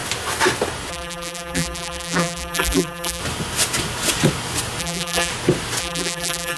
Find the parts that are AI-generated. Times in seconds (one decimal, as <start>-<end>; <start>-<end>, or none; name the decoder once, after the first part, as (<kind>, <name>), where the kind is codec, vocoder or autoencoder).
0.9-3.2 (vocoder, BigVGAN v2); 4.8-5.3; 5.8-6.6

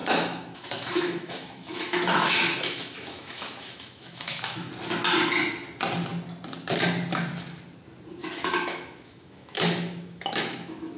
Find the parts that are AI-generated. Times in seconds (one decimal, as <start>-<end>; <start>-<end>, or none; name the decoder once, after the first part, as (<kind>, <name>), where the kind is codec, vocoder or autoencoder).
0.0-4.7 (autoencoder, DAC-VAE); 8.2-11.0

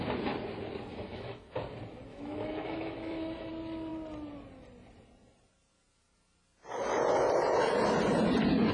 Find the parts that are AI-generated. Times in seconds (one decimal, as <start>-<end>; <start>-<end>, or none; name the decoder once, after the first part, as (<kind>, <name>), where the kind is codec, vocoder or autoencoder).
0.9-1.5 (autoencoder, DAC-VAE); 2.1-3.5

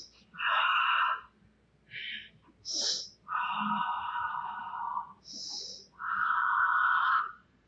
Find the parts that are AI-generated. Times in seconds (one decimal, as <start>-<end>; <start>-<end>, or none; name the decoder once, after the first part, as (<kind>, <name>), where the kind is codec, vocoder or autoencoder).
6.9-7.7 (vocoder, Vocos)

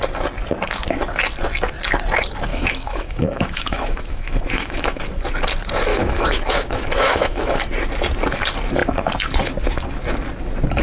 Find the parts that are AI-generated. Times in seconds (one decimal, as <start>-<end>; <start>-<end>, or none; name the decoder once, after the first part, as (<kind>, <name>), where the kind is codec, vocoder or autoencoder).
2.5-5.0 (autoencoder, DAC-VAE); 5.9-7.6

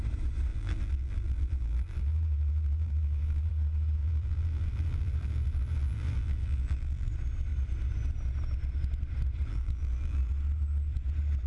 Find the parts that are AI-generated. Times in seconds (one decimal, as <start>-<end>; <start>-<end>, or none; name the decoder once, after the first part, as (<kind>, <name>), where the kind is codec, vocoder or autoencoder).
0.5-3.5 (vocoder, BigVGAN v2); 4.0-7.1; 9.5-10.3

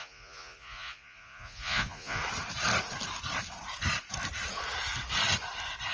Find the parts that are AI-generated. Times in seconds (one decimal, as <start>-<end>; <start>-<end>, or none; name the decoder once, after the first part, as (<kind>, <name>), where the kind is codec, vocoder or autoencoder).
0.0-2.2 (vocoder, Vocos)